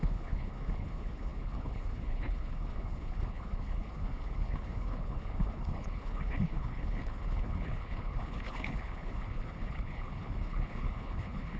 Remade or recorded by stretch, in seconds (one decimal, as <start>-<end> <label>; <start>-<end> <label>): 0.0-11.6 remade

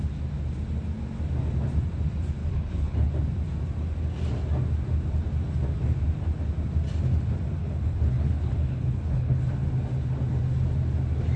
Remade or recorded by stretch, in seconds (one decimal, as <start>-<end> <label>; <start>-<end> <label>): 0.0-2.4 recorded; 2.4-3.1 remade; 3.1-7.6 recorded; 7.6-9.4 remade; 9.4-11.4 recorded

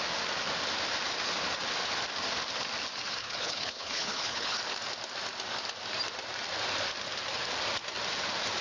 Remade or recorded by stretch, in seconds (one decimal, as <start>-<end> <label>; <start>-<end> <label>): 0.0-3.2 recorded; 3.2-4.6 remade; 4.6-8.6 recorded

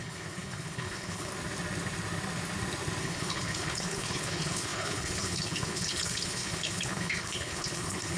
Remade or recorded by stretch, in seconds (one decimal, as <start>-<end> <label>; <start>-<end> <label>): 0.0-1.3 remade; 1.3-3.0 recorded; 3.0-8.2 remade

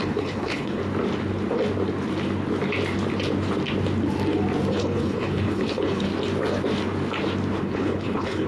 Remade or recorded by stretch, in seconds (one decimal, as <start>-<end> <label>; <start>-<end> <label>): 0.0-0.8 remade; 0.8-4.7 recorded; 4.7-6.1 remade; 6.1-7.6 recorded; 7.6-8.5 remade

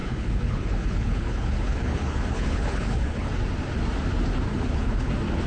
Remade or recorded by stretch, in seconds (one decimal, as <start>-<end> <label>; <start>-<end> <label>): 0.0-3.3 remade; 3.3-4.5 recorded; 4.5-5.1 remade; 5.1-5.5 recorded

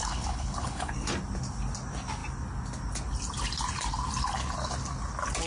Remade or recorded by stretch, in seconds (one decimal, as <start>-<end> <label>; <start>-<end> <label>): 0.0-0.9 remade; 0.9-5.5 recorded

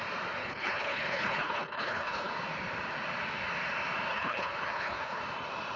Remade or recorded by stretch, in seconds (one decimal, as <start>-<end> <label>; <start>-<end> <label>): 0.0-0.4 recorded; 0.4-2.3 remade; 2.3-4.1 recorded; 4.1-5.2 remade; 5.2-5.8 recorded